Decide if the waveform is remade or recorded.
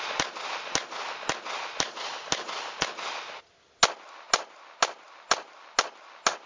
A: recorded